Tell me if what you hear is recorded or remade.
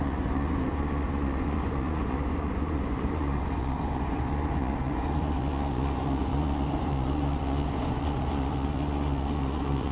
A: remade